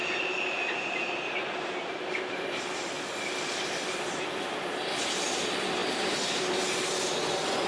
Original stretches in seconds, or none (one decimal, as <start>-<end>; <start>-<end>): 2.9-7.7